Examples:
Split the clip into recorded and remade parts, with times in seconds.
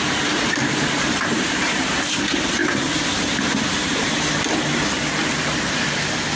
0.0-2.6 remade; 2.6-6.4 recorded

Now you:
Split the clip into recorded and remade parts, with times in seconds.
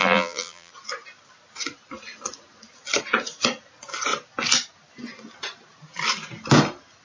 0.0-0.7 remade; 0.7-7.0 recorded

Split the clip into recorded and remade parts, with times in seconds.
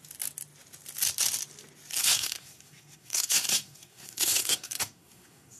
0.0-2.0 recorded; 2.0-5.6 remade